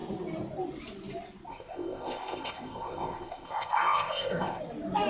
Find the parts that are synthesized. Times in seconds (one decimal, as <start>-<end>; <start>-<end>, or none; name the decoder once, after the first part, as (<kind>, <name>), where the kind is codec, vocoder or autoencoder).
1.5-4.6 (codec, ZipCodec)